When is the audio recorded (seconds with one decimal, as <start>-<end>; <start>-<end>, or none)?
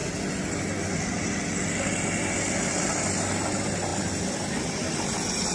0.0-5.5